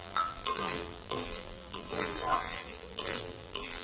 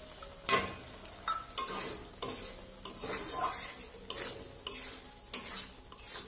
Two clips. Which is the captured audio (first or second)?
second